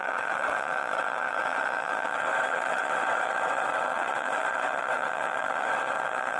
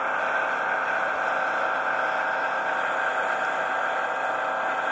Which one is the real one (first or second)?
second